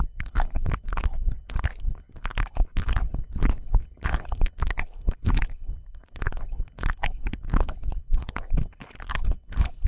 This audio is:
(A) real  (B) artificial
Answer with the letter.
B